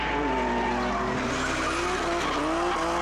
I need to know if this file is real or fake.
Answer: real